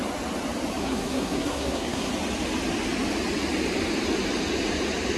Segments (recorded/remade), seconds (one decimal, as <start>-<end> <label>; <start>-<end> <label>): 0.0-0.8 recorded; 0.8-2.1 remade; 2.1-5.2 recorded